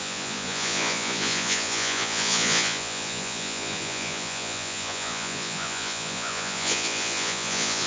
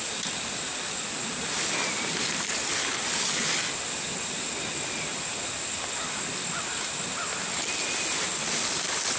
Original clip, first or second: second